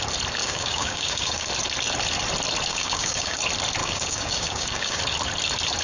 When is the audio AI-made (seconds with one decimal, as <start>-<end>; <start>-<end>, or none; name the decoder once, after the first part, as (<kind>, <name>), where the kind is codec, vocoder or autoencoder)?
0.4-1.5 (codec, DAC); 2.7-3.4; 3.8-5.0